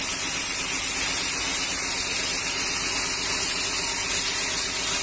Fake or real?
real